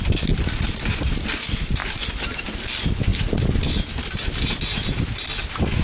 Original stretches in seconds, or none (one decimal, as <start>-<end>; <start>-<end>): 0.0-5.8